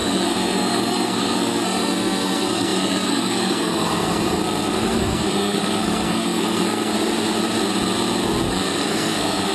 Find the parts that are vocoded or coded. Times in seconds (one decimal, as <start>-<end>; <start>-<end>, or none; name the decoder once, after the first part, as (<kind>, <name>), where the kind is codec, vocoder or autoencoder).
0.0-6.9 (codec, SNAC); 8.5-9.5